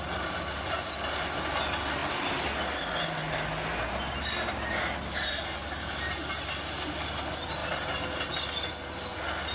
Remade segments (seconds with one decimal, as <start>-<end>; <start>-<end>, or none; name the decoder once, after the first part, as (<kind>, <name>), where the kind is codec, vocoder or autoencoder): none